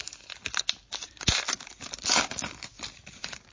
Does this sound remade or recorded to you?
recorded